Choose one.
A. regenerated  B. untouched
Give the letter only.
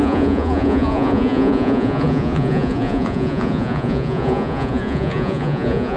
A